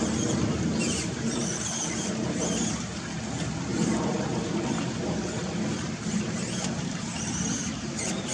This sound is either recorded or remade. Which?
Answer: remade